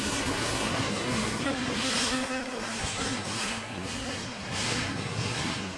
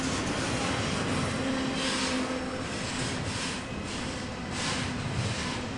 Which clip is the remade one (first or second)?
first